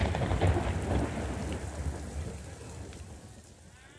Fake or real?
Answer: real